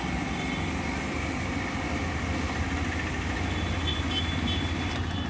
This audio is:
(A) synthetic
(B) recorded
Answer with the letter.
B